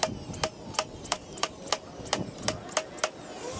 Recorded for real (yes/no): yes